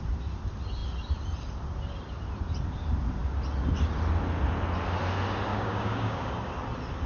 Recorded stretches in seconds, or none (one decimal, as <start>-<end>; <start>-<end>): 0.0-5.5; 6.3-7.1